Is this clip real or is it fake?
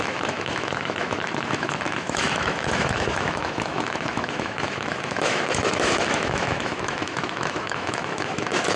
fake